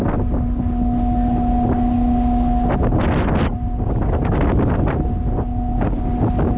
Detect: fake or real real